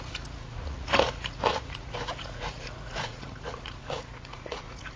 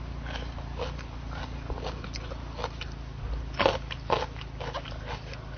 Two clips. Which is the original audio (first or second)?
second